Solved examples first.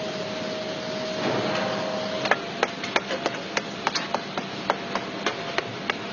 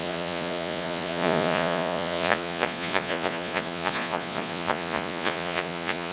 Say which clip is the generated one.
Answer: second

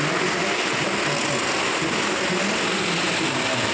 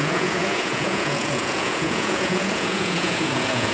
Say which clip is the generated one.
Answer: second